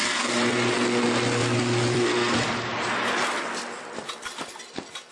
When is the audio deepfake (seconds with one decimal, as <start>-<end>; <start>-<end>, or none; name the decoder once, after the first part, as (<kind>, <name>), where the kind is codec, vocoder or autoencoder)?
1.4-3.4 (vocoder, BigVGAN v2); 4.0-5.1